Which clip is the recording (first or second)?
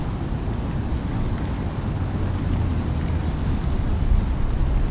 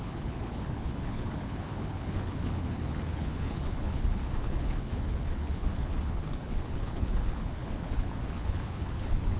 first